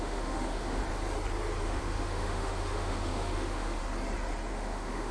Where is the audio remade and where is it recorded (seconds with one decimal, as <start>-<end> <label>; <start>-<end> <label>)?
0.0-0.8 remade; 0.8-1.6 recorded; 1.6-3.8 remade; 3.8-4.5 recorded; 4.5-5.1 remade